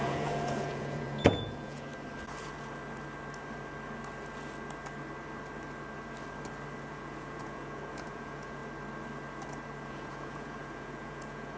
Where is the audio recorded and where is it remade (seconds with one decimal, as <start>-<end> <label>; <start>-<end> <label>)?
0.0-1.9 remade; 1.9-6.9 recorded; 6.9-8.6 remade; 8.6-9.9 recorded; 9.9-11.6 remade